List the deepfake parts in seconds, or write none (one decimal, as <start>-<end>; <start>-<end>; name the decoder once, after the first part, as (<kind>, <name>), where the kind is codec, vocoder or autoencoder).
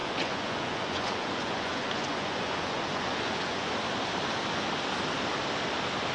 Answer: 0.0-3.7 (vocoder, Vocos)